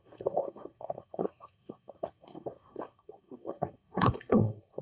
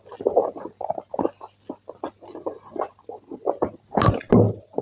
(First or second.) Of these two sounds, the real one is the second